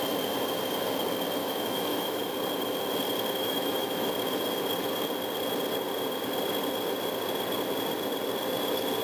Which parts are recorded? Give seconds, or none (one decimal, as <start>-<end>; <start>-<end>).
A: 0.0-1.4; 2.3-3.4; 4.1-9.0